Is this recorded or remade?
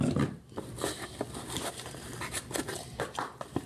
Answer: recorded